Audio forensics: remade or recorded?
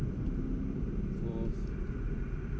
remade